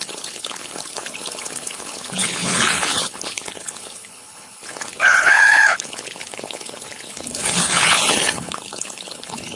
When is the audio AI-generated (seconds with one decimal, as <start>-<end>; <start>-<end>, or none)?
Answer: 0.0-9.6